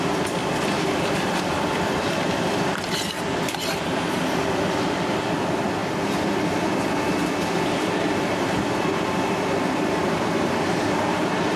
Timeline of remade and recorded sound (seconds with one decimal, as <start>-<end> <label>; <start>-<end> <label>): 0.0-5.8 remade; 5.8-7.5 recorded; 7.5-11.6 remade